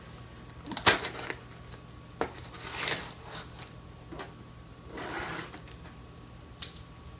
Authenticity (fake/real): real